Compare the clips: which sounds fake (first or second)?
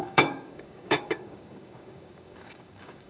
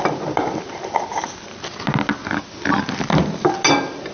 first